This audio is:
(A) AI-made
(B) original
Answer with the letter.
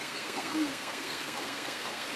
A